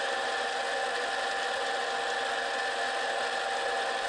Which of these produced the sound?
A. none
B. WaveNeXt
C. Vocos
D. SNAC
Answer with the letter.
A